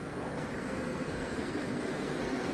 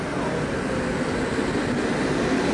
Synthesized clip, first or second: first